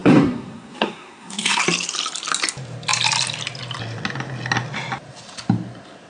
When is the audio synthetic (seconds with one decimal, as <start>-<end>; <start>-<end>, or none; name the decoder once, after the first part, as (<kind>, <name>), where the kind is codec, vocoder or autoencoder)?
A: 0.0-1.6 (codec, SNAC)